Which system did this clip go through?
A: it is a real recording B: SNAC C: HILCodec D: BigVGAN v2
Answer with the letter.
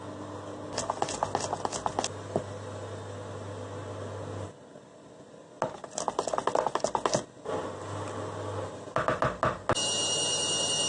A